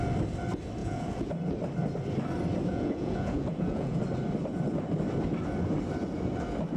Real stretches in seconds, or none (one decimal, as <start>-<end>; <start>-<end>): 0.0-0.8; 1.3-2.7; 4.0-6.8